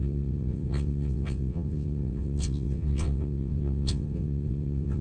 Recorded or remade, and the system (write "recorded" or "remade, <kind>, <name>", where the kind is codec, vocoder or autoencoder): remade, vocoder, WaveNeXt